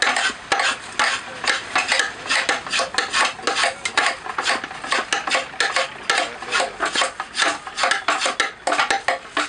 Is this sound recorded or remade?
recorded